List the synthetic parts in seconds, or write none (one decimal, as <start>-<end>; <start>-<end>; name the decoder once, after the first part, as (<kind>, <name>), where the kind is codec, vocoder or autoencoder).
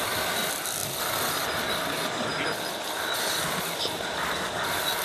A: none